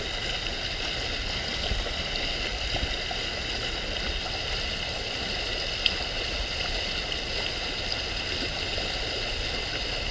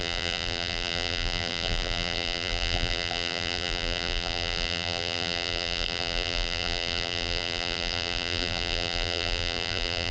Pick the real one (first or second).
first